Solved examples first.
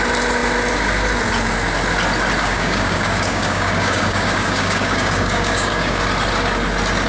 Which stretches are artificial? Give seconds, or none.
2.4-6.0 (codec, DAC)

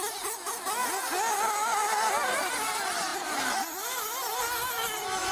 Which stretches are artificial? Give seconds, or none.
none

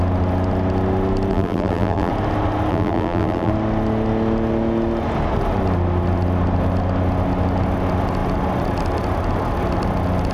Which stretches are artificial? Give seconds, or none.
1.3-2.1 (vocoder, BigVGAN v2); 2.7-3.5